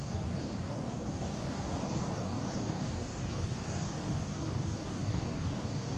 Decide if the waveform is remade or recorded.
remade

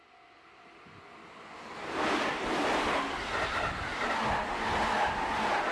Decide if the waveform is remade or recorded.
recorded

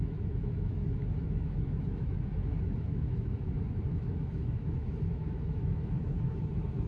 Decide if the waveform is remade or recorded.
remade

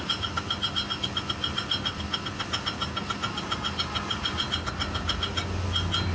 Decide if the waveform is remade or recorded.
recorded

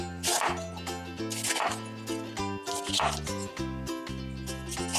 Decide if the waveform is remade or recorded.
recorded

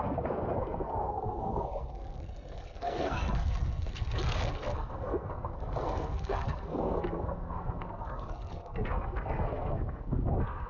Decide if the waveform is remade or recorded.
remade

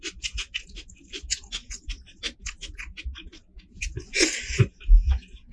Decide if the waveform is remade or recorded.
recorded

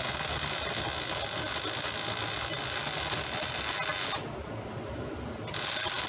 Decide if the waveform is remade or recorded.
recorded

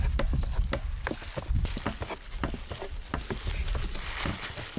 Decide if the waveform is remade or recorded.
recorded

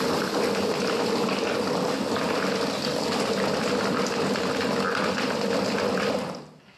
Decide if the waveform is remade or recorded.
recorded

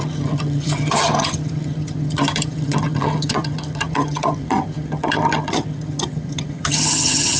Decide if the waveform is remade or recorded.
remade